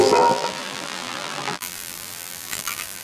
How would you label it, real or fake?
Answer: fake